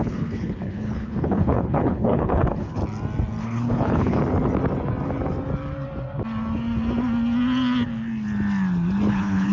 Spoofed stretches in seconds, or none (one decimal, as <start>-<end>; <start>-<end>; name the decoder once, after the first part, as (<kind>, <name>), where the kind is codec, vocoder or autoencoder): 0.0-2.8 (codec, HILCodec); 3.4-4.2; 9.1-9.5